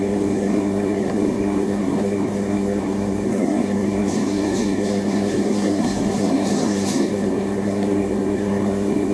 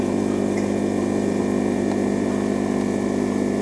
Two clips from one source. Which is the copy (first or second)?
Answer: first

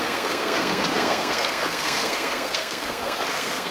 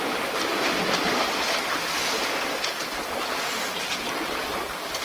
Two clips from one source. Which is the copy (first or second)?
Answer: first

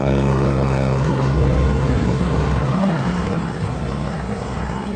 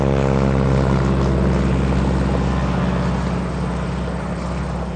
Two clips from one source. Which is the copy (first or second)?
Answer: first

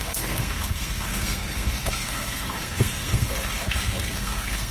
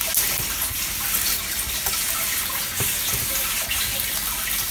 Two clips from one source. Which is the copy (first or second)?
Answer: first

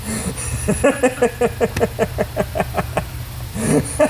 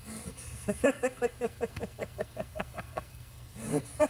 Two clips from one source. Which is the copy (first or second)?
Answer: second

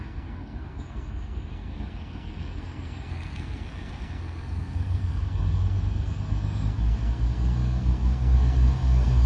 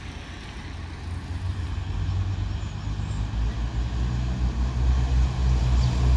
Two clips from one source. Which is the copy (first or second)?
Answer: first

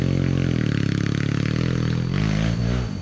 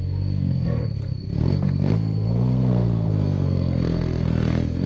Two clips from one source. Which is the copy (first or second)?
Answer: second